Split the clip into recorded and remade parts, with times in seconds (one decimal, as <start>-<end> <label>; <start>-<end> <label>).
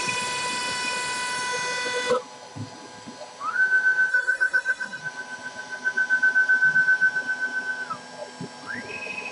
0.0-4.1 recorded; 4.1-5.0 remade; 5.0-9.3 recorded